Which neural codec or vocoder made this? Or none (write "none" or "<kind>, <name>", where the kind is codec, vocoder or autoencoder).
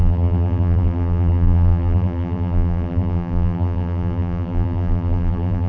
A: vocoder, BigVGAN v2